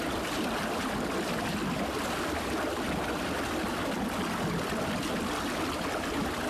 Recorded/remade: recorded